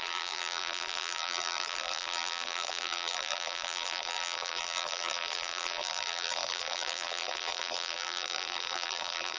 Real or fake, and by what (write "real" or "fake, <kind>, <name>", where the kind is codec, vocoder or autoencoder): fake, vocoder, BigVGAN v2